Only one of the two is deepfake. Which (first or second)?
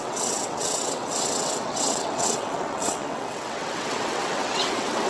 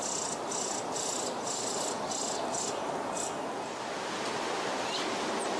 first